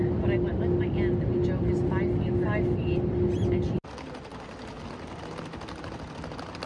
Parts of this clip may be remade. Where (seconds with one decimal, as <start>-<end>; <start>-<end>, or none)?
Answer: none